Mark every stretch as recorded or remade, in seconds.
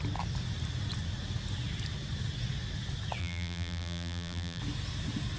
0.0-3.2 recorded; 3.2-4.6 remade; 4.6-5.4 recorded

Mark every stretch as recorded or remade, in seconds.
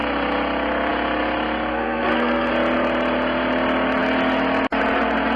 0.0-1.7 recorded; 1.7-2.5 remade; 2.5-5.4 recorded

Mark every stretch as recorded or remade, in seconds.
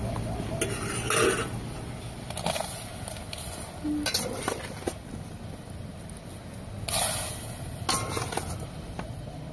0.0-9.5 recorded